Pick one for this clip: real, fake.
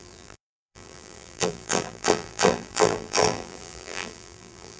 fake